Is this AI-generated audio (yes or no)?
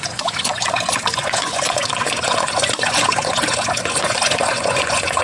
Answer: yes